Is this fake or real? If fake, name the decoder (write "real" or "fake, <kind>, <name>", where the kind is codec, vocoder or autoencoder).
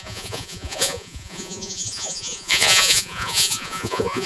fake, vocoder, Vocos